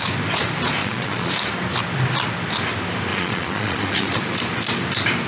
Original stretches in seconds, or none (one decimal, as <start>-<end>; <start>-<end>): 0.0-0.8; 1.3-3.1; 4.2-5.3